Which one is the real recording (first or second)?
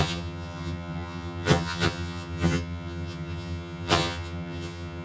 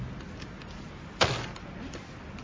second